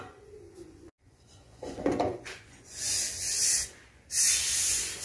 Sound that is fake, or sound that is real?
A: fake